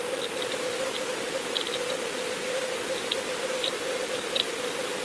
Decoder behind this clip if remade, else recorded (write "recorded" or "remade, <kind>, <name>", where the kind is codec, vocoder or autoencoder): recorded